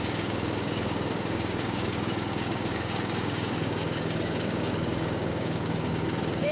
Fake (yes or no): yes